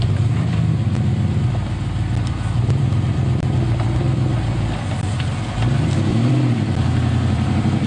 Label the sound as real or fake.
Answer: fake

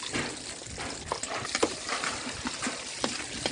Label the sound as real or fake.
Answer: real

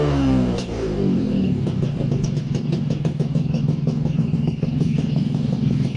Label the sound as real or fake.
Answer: fake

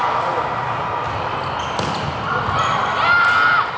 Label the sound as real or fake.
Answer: real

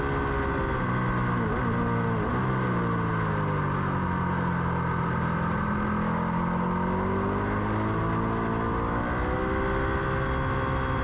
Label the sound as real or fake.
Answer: real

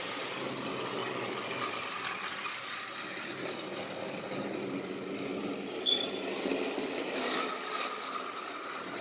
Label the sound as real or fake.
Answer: real